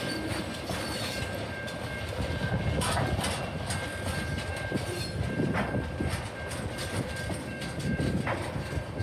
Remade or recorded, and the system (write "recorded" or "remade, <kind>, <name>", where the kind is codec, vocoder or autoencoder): recorded